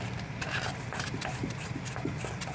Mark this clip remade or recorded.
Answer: recorded